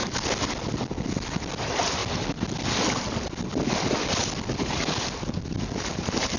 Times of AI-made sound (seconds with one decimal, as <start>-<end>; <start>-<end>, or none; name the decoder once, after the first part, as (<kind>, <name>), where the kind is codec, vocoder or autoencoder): 1.6-2.0 (vocoder, BigVGAN v2); 5.8-6.4